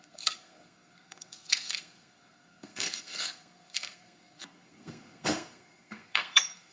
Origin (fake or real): fake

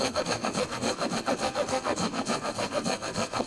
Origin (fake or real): fake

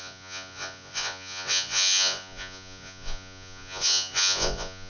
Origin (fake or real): fake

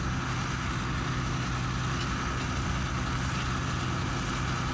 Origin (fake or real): real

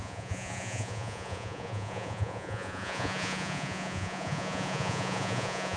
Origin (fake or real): fake